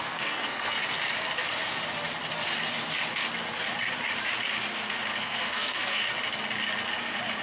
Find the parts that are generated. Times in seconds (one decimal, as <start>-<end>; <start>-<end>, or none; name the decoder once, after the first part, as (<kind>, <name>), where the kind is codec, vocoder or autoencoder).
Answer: 0.0-0.8 (codec, SNAC); 5.2-6.0